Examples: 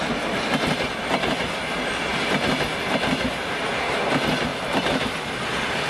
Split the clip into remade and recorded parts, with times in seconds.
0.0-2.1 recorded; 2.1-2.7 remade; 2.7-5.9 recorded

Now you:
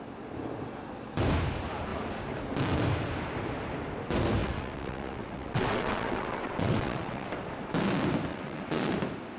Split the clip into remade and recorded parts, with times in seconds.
0.0-4.4 recorded; 4.4-7.3 remade; 7.3-8.3 recorded; 8.3-8.9 remade; 8.9-9.4 recorded

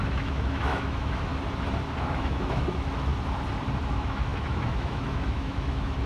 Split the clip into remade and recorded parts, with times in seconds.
0.0-1.3 remade; 1.3-2.0 recorded; 2.0-3.1 remade; 3.1-3.9 recorded; 3.9-6.1 remade

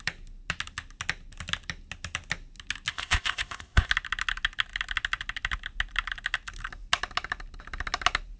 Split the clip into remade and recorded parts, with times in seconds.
0.0-2.9 recorded; 2.9-3.9 remade; 3.9-8.4 recorded

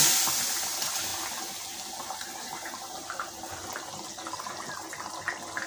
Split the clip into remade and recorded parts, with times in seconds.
0.0-5.7 recorded

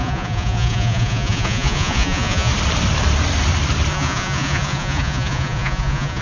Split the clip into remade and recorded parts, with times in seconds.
0.0-2.5 remade; 2.5-3.9 recorded; 3.9-6.2 remade